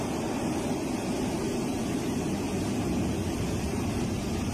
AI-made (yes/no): no